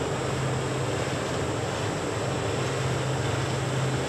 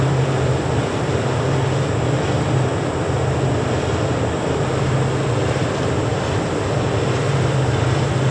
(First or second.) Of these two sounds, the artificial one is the second